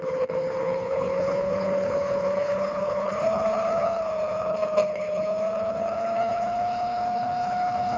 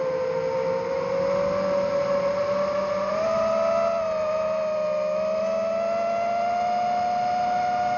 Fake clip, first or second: first